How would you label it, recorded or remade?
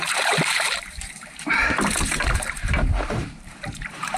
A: remade